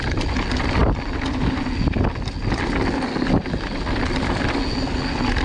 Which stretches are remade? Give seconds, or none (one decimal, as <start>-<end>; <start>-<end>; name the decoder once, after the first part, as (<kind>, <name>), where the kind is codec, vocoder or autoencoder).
none